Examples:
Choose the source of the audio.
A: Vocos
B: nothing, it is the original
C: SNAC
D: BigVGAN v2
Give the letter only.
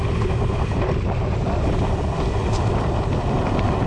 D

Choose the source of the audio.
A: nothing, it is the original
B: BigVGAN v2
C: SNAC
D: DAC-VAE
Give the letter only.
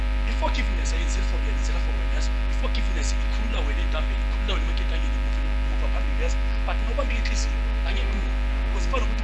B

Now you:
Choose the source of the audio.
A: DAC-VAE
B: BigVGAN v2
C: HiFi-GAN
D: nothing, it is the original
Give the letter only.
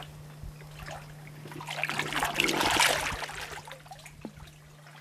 D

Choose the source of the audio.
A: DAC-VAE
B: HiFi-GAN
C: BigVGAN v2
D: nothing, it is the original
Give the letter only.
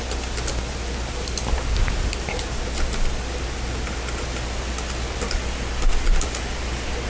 D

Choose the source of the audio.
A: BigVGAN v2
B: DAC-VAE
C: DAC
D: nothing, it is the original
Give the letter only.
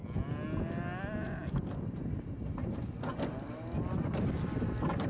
D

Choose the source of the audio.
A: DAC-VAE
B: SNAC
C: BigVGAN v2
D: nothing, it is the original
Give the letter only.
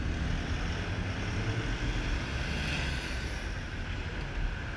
D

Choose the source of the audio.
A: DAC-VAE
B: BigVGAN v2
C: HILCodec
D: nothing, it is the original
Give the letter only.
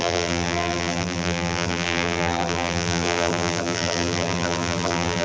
B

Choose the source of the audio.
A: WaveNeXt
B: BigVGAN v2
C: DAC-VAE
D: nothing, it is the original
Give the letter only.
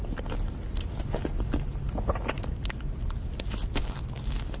D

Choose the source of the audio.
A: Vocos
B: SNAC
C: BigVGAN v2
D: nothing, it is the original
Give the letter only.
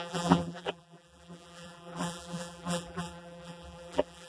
C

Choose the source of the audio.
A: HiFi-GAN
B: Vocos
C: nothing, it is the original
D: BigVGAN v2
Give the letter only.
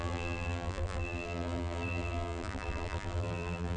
D